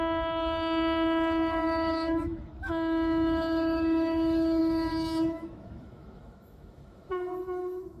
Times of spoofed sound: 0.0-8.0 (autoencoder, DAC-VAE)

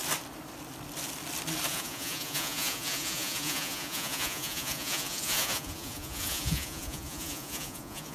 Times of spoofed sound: 1.7-8.1 (vocoder, Vocos)

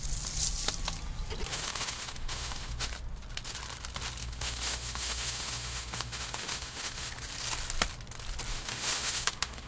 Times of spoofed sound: 1.5-2.9 (autoencoder, DAC-VAE); 4.2-7.1; 8.5-9.7

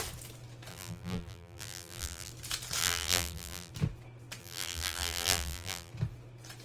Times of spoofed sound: 0.7-2.3 (vocoder, BigVGAN v2); 2.8-3.7; 4.4-5.9

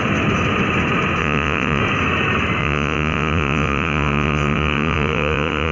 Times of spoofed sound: 1.2-1.8 (vocoder, WaveNeXt); 2.6-5.7

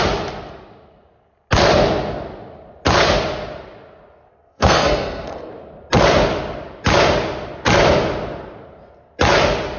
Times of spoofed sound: 4.3-5.5 (codec, SNAC)

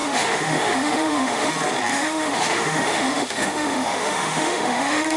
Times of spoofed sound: 0.0-1.5 (autoencoder, DAC-VAE); 1.9-5.2